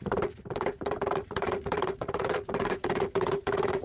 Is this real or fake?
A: fake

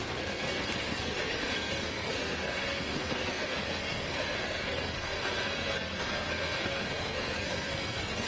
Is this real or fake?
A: fake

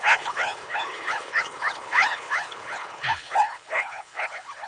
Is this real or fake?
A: fake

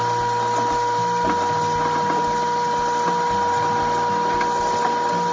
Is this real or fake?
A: real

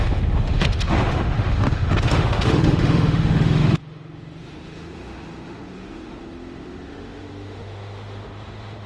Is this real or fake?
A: fake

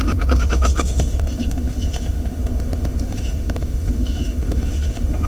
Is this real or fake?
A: fake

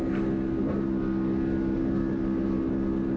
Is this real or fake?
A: real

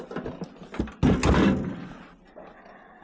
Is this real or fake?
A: real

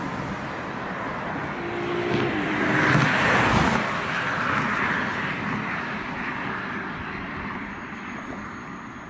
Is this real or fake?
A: real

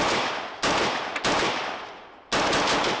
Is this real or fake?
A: real